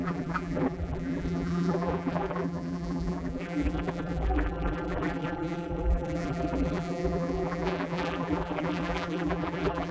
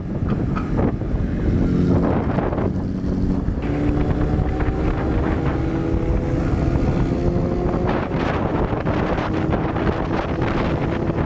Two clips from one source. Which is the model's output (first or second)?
first